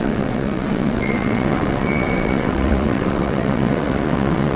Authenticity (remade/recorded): remade